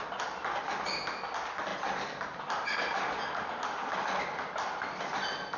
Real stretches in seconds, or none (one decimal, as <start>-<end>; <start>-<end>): 0.0-5.6